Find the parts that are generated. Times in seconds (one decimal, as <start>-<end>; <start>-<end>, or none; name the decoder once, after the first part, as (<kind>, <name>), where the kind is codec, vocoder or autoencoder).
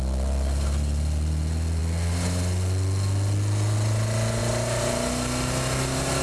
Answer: none